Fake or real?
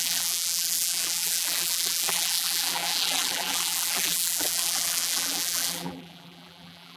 fake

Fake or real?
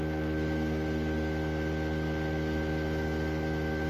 real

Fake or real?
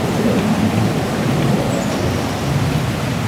fake